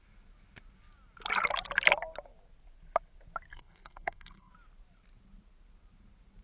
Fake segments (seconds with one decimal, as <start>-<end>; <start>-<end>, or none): 3.5-4.5